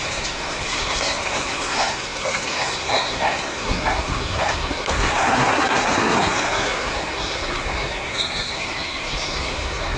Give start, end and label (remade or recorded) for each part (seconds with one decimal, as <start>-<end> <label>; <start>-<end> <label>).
0.0-10.0 remade